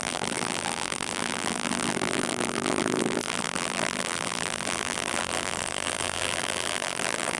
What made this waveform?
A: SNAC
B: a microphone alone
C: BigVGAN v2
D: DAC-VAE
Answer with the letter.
C